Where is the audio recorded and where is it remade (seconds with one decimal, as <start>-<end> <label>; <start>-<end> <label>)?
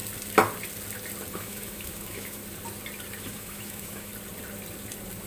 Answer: 0.0-1.3 recorded; 1.3-2.4 remade; 2.4-3.2 recorded; 3.2-4.1 remade; 4.1-5.3 recorded